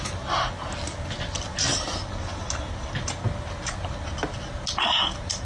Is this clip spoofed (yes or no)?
no